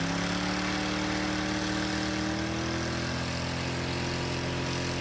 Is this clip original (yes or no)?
yes